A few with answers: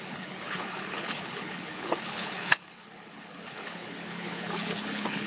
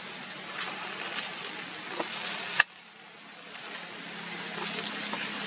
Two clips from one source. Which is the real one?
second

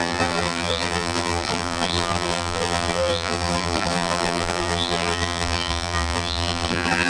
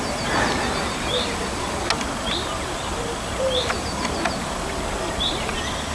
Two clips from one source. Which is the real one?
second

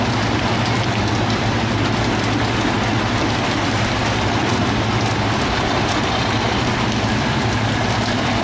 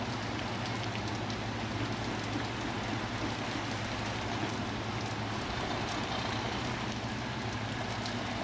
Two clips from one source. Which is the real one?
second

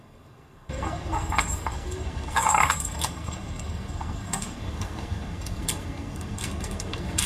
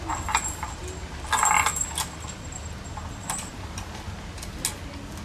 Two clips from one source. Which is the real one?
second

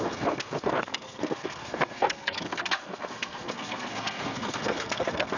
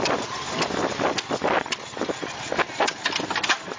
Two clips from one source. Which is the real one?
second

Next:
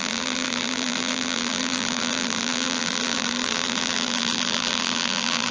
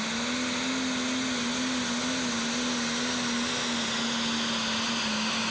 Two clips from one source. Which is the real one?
second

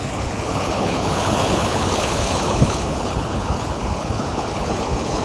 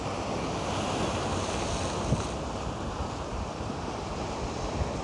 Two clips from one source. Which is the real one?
second